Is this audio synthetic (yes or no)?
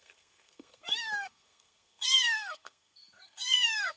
yes